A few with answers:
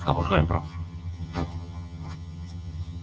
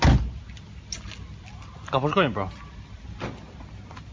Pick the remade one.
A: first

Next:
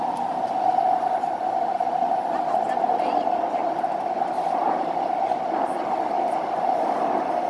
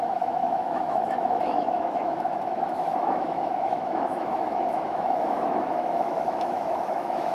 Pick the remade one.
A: second